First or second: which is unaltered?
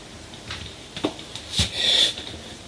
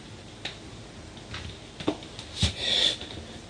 second